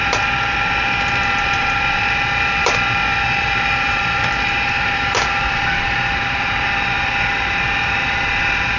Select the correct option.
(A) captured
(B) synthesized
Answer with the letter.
B